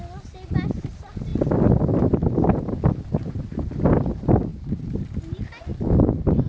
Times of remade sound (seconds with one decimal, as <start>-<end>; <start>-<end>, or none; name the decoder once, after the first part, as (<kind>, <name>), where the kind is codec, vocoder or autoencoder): 4.5-5.2 (vocoder, BigVGAN v2)